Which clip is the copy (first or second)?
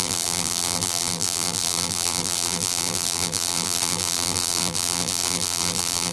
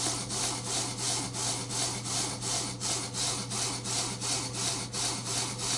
first